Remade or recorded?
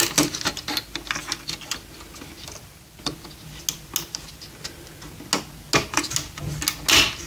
recorded